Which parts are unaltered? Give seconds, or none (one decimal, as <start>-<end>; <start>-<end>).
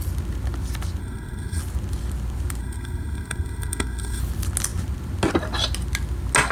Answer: 0.0-1.0; 1.6-2.6; 4.2-6.5